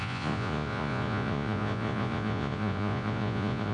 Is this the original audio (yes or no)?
no